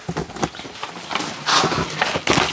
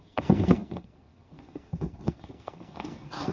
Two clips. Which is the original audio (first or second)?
first